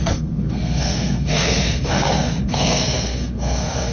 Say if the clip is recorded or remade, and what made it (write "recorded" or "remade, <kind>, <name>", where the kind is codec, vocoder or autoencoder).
remade, codec, SNAC